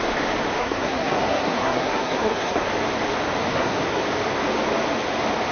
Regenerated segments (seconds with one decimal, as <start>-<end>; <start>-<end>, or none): 0.6-2.7; 3.5-4.0